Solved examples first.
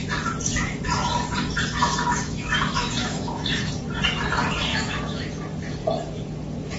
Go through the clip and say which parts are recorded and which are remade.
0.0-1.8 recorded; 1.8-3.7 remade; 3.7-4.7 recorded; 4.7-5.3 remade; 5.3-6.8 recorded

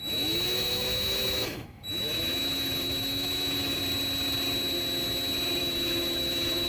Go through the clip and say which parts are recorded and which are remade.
0.0-3.8 remade; 3.8-5.6 recorded; 5.6-6.7 remade

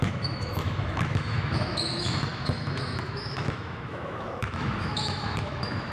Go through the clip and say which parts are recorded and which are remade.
0.0-5.9 remade

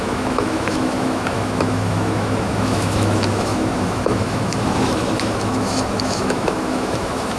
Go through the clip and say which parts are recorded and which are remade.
0.0-7.4 remade

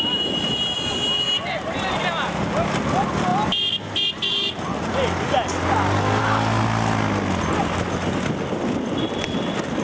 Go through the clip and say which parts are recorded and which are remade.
0.0-9.8 recorded

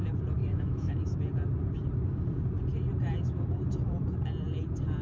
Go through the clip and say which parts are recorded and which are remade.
0.0-0.4 recorded; 0.4-1.2 remade; 1.2-5.0 recorded

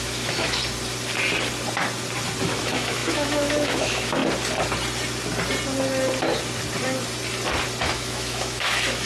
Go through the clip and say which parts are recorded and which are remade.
0.0-0.6 remade; 0.6-2.4 recorded; 2.4-4.2 remade; 4.2-7.8 recorded; 7.8-9.1 remade